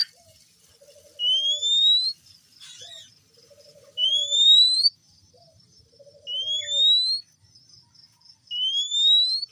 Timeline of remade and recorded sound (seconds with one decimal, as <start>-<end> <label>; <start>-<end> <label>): 0.0-0.7 remade; 0.7-3.7 recorded; 3.7-5.8 remade; 5.8-9.5 recorded